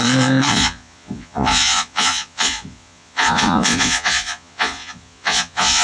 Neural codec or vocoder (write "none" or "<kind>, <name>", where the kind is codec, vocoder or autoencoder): vocoder, Vocos